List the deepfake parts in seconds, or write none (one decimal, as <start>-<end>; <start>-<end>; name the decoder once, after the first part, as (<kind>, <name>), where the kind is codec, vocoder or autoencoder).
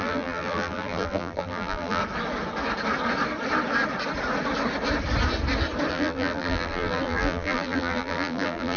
0.0-2.0 (vocoder, BigVGAN v2); 5.9-8.8